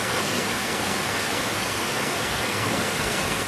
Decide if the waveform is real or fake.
fake